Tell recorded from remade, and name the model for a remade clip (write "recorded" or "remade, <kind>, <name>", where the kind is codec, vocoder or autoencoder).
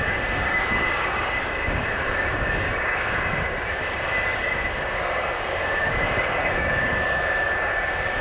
remade, codec, DAC